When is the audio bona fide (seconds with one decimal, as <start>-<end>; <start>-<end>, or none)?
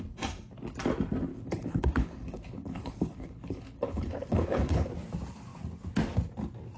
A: 0.0-1.3; 4.9-6.8